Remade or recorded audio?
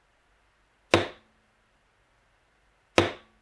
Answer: recorded